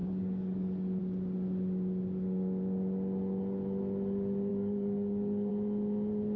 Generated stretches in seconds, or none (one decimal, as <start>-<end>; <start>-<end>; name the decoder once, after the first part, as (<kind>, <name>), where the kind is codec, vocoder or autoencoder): 0.0-1.0 (codec, DAC); 4.5-5.5